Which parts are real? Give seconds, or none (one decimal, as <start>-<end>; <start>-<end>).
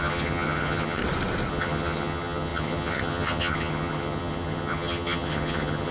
1.0-1.5